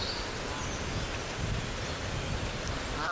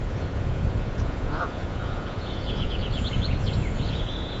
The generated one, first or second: second